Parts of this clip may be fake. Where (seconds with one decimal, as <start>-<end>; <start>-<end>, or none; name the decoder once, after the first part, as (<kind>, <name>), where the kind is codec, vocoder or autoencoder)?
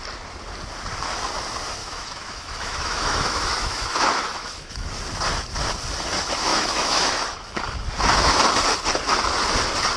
1.8-4.9 (autoencoder, DAC-VAE); 6.5-7.6